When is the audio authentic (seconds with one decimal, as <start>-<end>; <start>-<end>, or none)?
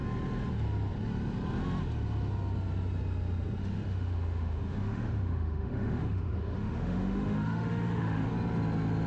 0.0-3.6; 8.3-9.1